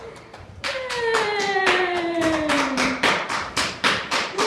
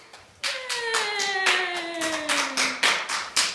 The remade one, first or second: first